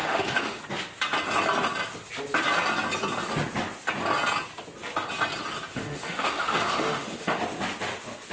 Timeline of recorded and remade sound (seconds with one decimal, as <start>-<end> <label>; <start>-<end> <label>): 0.0-0.6 remade; 0.6-5.7 recorded; 5.7-7.4 remade; 7.4-8.3 recorded